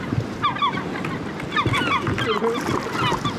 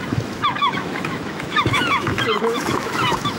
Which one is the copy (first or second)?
second